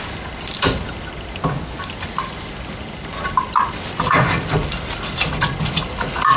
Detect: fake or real real